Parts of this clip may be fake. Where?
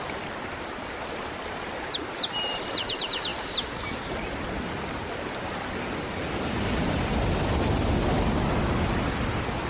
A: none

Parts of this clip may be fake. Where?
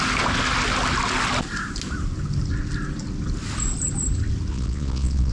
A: 4.5-5.3 (vocoder, Vocos)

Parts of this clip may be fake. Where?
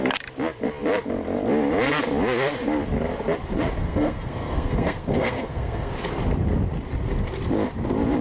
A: 3.8-5.9 (codec, SNAC)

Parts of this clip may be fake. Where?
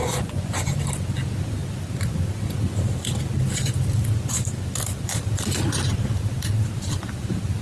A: 0.0-0.8 (vocoder, Vocos)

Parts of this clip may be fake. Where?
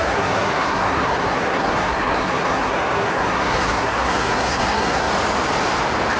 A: 0.0-5.1 (codec, SNAC)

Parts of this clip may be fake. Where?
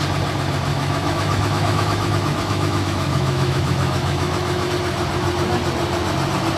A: 0.7-4.7 (autoencoder, DAC-VAE)